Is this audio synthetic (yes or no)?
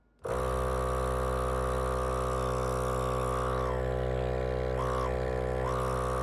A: no